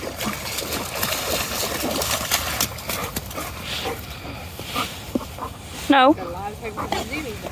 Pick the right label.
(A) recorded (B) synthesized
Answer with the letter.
A